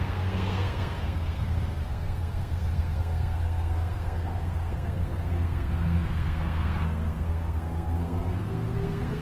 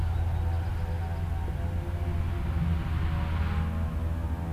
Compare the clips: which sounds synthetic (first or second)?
first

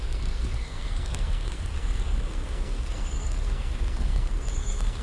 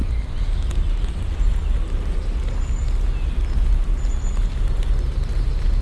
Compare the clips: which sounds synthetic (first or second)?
first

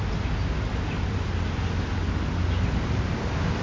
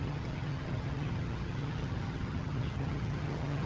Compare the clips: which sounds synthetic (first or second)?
second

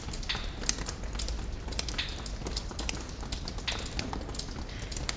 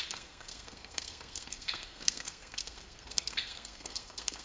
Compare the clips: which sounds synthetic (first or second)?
second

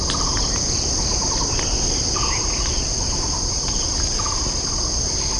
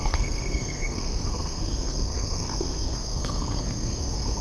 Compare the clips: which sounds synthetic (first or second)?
second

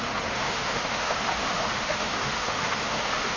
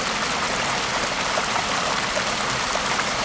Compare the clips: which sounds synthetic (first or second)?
first